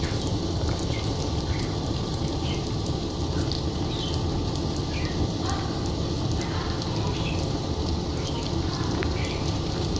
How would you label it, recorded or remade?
remade